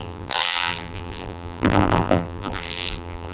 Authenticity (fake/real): fake